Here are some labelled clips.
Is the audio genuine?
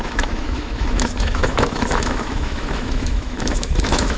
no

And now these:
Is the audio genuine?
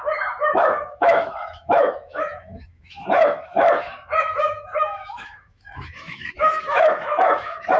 no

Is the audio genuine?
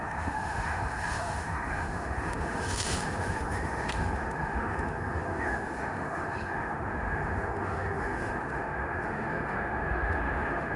no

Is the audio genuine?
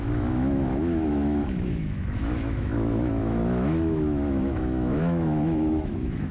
no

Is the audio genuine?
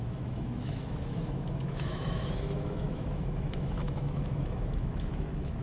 no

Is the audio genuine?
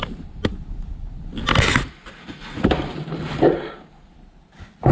yes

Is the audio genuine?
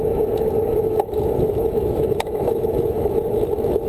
no